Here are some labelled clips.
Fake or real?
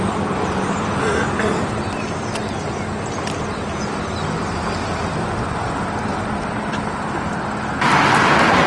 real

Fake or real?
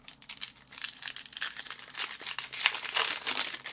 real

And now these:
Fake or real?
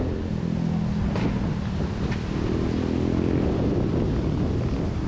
real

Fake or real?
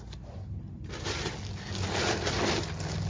real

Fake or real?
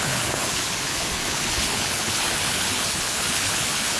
fake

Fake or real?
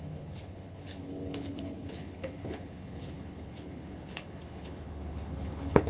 fake